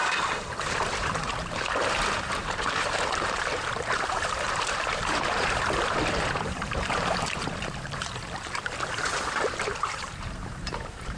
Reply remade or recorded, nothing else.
remade